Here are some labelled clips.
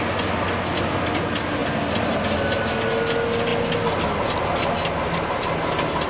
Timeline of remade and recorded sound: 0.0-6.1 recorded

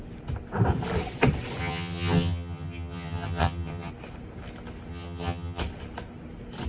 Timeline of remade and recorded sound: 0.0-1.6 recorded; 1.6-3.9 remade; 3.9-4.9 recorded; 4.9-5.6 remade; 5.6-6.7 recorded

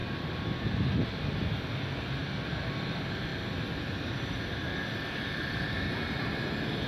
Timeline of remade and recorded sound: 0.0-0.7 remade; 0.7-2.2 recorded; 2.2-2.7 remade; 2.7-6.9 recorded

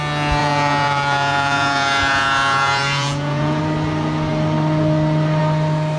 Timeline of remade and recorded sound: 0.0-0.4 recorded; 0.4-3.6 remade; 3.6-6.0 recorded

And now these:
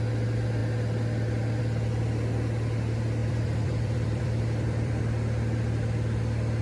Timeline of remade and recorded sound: 0.0-3.2 recorded; 3.2-5.0 remade; 5.0-6.6 recorded

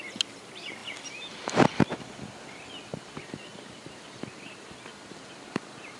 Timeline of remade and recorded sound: 0.0-6.0 recorded

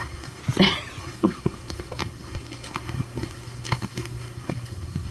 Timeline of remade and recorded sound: 0.0-0.4 remade; 0.4-1.0 recorded; 1.0-5.1 remade

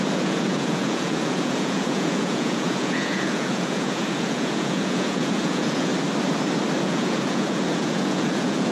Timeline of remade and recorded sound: 0.0-5.9 remade; 5.9-6.8 recorded; 6.8-8.7 remade